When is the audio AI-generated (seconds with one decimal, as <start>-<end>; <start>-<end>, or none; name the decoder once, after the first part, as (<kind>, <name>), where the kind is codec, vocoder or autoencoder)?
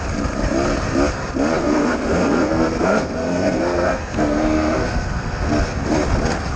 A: 1.6-5.5 (codec, SNAC)